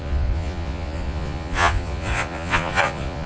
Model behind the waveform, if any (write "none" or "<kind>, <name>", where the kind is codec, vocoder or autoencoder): vocoder, Vocos